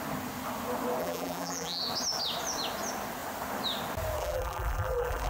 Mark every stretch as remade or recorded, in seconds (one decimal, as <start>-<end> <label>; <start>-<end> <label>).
0.0-1.0 recorded; 1.0-1.8 remade; 1.8-4.2 recorded; 4.2-5.3 remade

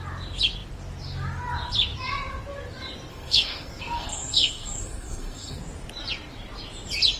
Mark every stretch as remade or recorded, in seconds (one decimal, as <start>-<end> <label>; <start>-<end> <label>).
0.0-3.1 recorded; 3.1-5.6 remade; 5.6-7.2 recorded